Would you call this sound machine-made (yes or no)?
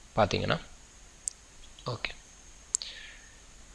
no